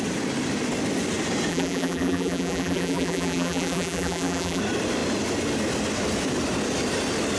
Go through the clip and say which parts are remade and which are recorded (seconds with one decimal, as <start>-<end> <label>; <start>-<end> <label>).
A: 0.0-1.5 recorded; 1.5-4.6 remade; 4.6-7.4 recorded